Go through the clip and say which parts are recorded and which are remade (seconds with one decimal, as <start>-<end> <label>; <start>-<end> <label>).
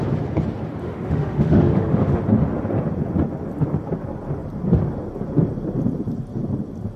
0.0-0.8 recorded; 0.8-2.2 remade; 2.2-7.0 recorded